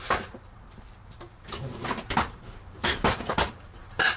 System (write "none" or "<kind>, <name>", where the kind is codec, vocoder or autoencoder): vocoder, BigVGAN v2